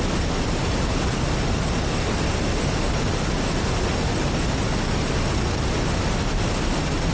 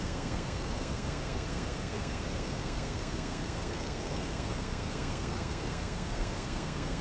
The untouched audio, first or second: first